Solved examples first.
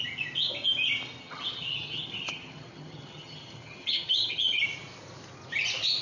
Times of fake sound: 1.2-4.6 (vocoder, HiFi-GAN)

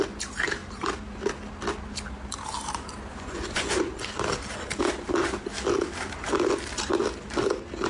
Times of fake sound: 3.1-4.0 (vocoder, Vocos)

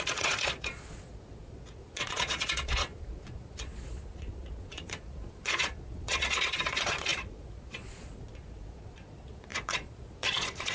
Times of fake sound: 0.0-10.7 (vocoder, Vocos)

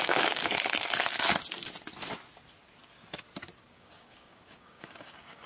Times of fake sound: 0.0-0.4 (codec, DAC); 3.7-5.5

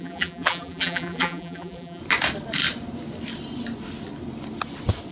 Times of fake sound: 0.0-2.0 (vocoder, BigVGAN v2)

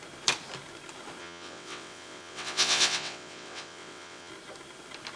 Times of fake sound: 1.2-4.3 (vocoder, WaveNeXt)

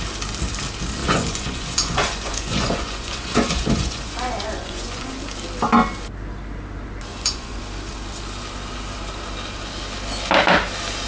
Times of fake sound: 1.0-5.1 (vocoder, Vocos); 7.1-7.6

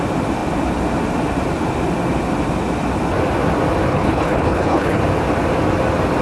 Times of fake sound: 3.9-5.0 (codec, HILCodec)